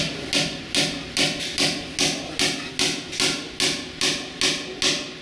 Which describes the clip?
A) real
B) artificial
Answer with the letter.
A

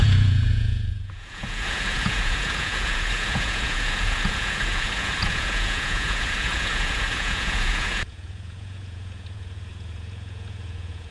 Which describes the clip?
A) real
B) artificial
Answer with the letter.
B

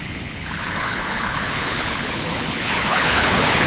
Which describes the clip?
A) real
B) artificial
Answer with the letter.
B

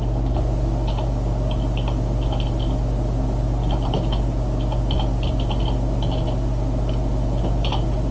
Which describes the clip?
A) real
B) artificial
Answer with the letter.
A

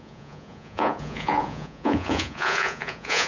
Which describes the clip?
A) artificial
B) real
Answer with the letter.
A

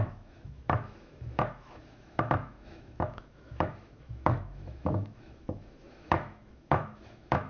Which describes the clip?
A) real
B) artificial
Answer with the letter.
B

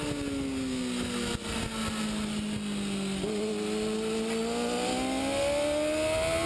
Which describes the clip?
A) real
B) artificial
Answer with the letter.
A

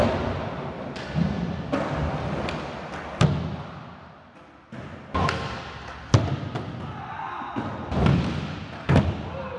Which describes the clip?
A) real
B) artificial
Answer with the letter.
A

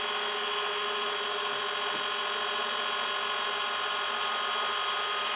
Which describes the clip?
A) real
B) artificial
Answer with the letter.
A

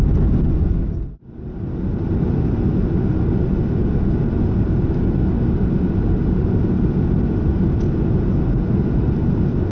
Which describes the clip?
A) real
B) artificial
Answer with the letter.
A